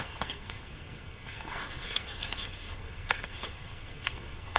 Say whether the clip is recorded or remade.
remade